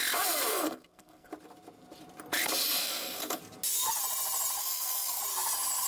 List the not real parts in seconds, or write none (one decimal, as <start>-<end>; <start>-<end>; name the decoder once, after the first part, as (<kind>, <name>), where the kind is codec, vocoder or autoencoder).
0.5-1.3 (codec, SNAC); 2.8-3.4; 4.6-5.2